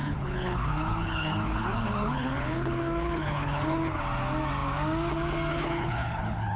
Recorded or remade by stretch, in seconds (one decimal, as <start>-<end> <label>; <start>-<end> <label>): 0.0-4.0 remade; 4.0-5.5 recorded; 5.5-6.6 remade